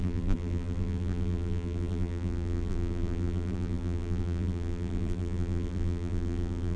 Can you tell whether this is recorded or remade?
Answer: remade